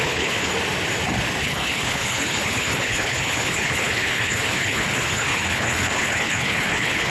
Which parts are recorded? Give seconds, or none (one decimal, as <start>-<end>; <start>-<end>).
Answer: 0.5-1.4